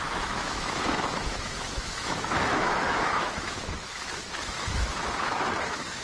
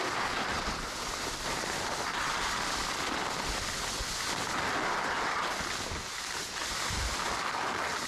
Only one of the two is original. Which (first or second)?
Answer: second